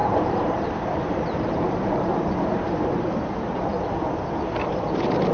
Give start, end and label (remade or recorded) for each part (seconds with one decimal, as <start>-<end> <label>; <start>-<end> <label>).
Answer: 0.0-3.7 remade; 3.7-4.7 recorded; 4.7-5.3 remade